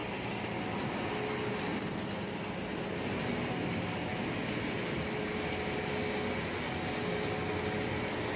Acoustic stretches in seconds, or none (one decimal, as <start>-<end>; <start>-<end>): 0.0-8.4